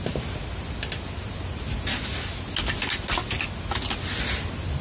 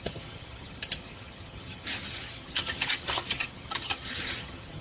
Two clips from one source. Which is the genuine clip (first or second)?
first